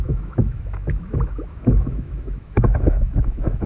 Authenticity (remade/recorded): remade